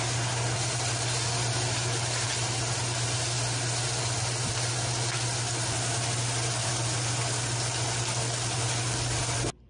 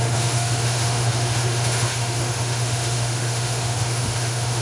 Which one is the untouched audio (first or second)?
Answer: first